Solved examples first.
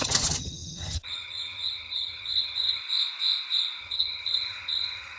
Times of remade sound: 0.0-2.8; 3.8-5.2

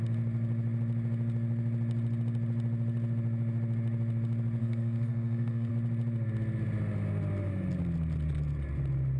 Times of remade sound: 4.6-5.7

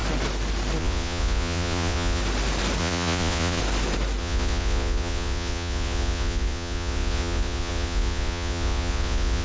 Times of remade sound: 0.8-2.2; 2.8-3.6; 4.2-9.4

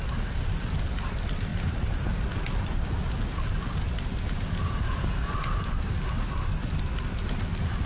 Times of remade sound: none